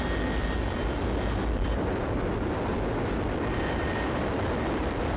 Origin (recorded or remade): remade